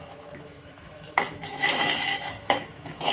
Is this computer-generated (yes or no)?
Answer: yes